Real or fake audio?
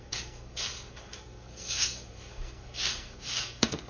fake